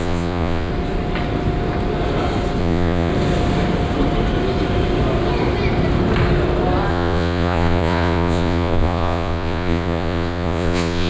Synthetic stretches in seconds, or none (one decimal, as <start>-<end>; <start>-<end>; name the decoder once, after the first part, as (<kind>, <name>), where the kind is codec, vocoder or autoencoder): 0.0-0.7 (vocoder, Vocos); 2.6-3.1; 6.9-11.1